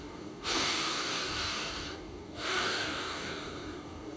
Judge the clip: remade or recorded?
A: remade